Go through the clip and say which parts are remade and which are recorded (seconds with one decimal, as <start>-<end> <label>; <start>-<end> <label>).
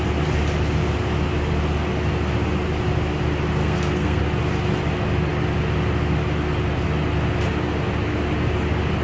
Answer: 0.0-3.6 recorded; 3.6-4.2 remade; 4.2-9.0 recorded